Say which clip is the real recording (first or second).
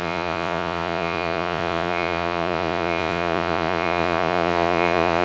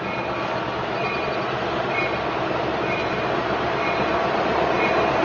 second